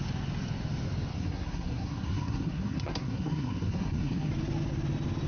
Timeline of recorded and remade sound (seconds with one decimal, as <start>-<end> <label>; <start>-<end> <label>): 0.0-1.1 recorded; 1.1-4.3 remade; 4.3-5.3 recorded